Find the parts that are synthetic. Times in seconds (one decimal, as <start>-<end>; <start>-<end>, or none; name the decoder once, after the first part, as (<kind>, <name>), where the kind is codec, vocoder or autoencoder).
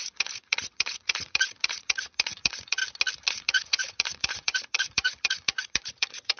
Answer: 0.0-2.8 (vocoder, Vocos); 3.3-6.4